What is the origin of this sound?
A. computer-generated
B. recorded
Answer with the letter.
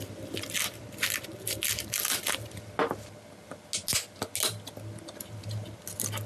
B